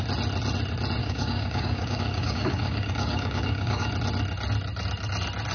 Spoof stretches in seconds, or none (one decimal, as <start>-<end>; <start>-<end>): 1.0-3.9